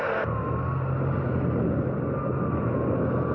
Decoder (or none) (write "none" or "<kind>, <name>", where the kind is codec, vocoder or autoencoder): none